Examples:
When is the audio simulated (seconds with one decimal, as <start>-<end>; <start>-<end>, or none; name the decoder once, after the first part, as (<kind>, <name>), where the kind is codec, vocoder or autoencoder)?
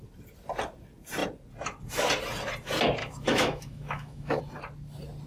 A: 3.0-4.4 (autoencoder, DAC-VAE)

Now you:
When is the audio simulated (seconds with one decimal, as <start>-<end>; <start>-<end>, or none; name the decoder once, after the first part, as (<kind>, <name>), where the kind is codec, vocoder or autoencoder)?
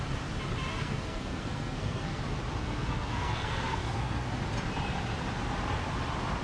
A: 0.7-2.2 (codec, SNAC); 2.6-4.3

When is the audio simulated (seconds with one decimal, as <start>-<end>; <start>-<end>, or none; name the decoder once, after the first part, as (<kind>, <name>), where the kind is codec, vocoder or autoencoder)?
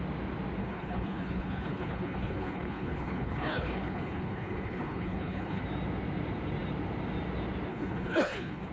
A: 0.6-5.6 (codec, HILCodec); 7.7-8.7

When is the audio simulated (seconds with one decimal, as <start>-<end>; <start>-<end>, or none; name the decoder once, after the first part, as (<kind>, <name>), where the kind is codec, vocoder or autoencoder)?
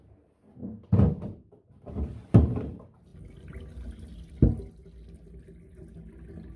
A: none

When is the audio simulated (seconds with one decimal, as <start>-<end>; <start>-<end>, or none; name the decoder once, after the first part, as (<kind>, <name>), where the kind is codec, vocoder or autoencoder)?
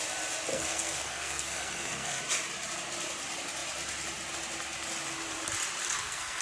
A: 0.5-2.2 (codec, SNAC); 5.8-6.4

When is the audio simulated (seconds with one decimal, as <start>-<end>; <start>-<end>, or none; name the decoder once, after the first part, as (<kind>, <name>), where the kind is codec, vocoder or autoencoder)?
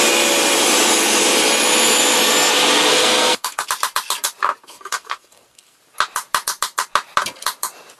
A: 2.9-3.7 (codec, SNAC); 4.6-5.8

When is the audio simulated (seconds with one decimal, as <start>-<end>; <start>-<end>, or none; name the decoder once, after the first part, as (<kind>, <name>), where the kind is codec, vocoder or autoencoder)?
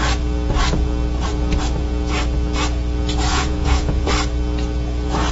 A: 3.3-4.1 (vocoder, Vocos)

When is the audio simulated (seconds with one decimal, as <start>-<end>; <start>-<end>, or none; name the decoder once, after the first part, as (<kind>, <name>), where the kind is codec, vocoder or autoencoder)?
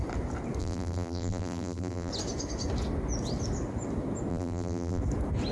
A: 0.6-2.1 (vocoder, BigVGAN v2); 4.3-5.0